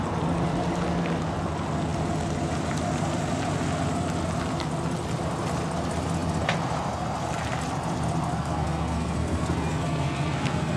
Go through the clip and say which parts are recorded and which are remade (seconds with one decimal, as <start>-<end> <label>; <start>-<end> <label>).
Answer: 0.0-8.3 recorded; 8.3-10.8 remade